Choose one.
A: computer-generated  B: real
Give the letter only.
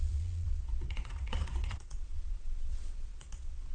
A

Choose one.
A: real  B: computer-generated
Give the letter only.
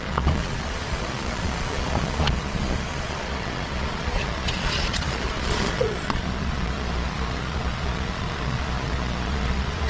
B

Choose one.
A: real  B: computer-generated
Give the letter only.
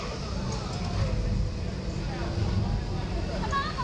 A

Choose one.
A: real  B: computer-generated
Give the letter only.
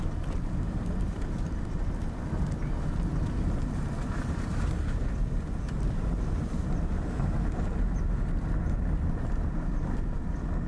A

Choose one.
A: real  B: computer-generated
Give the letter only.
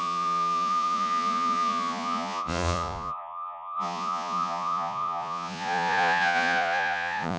B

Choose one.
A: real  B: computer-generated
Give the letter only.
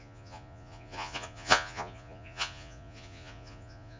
B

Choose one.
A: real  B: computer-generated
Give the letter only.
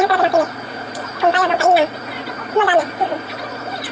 B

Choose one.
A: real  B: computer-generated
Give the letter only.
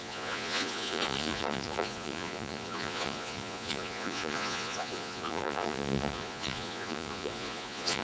B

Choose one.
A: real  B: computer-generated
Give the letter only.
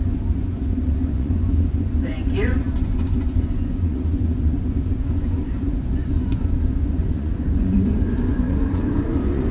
B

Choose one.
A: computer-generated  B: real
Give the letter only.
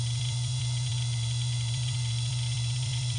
A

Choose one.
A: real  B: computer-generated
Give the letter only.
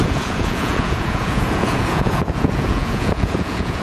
B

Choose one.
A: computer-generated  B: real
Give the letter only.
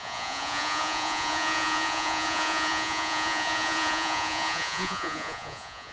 A